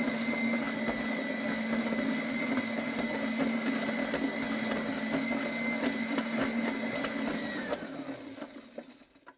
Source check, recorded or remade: recorded